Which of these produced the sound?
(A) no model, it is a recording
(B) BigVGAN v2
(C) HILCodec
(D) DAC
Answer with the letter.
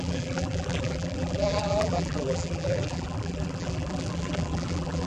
B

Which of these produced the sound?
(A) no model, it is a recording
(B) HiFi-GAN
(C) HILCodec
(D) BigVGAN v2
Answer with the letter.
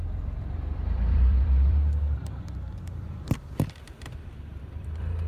D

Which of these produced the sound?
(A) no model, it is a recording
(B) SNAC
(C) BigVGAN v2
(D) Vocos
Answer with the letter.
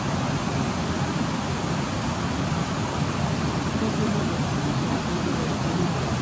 C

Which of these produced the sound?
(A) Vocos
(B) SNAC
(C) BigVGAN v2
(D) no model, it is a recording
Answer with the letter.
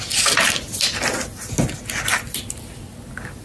D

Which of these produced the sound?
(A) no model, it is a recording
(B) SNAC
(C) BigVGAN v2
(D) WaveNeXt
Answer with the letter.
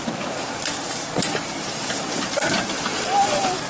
A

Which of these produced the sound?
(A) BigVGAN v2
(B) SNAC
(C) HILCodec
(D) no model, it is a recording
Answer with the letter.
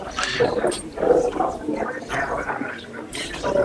D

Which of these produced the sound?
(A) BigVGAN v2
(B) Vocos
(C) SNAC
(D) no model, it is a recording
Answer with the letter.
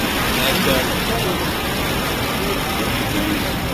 D